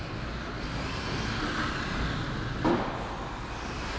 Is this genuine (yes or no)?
yes